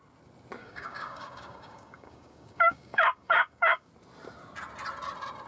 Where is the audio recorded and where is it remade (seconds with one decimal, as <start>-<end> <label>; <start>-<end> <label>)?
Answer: 0.0-0.6 recorded; 0.6-3.9 remade; 3.9-5.5 recorded